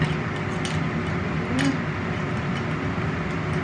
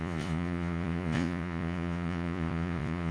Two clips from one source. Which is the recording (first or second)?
first